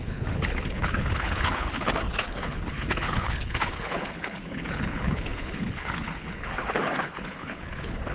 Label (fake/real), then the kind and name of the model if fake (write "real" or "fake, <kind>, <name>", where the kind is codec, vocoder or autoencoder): fake, codec, HILCodec